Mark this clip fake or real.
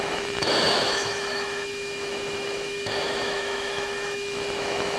fake